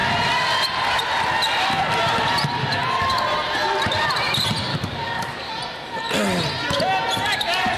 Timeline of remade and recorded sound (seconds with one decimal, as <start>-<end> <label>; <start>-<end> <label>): 0.0-4.7 recorded; 4.7-5.5 remade; 5.5-7.8 recorded